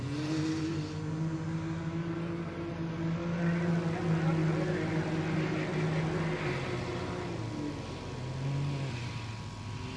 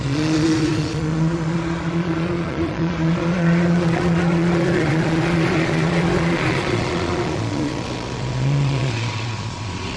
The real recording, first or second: first